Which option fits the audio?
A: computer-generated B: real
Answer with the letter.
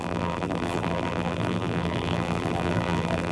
A